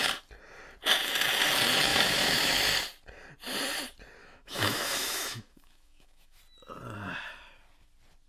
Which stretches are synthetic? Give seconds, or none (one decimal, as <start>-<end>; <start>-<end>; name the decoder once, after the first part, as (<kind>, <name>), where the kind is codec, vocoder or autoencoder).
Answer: 1.9-2.5 (autoencoder, DAC-VAE); 4.2-6.4